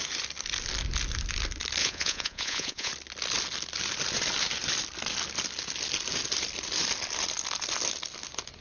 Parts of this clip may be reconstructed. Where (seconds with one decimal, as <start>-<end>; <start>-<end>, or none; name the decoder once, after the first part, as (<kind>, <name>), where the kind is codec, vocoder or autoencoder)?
1.8-2.9 (vocoder, Vocos)